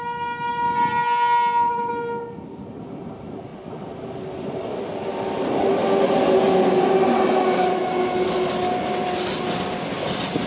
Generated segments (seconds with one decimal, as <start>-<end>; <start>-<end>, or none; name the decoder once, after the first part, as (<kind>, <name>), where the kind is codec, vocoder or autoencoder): none